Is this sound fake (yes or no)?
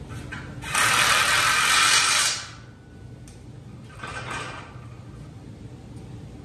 no